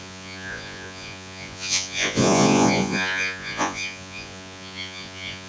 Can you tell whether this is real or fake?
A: fake